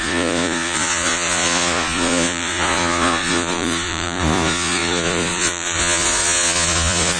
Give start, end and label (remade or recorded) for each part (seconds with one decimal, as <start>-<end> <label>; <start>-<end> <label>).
0.0-7.2 remade